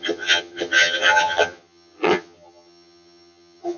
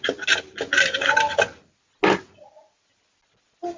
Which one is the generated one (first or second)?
first